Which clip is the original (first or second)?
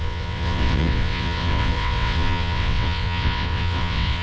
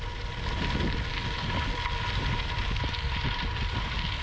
second